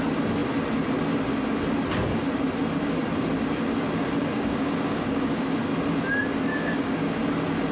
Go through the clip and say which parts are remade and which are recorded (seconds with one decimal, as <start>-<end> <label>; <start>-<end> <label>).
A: 0.0-4.2 recorded; 4.2-5.6 remade; 5.6-6.5 recorded; 6.5-7.2 remade; 7.2-7.7 recorded